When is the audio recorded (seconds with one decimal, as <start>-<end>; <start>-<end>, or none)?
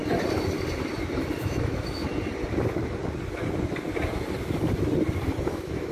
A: 0.0-1.4; 2.0-5.5